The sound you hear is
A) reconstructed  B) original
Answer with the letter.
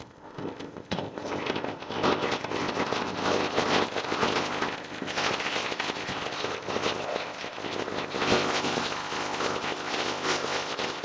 A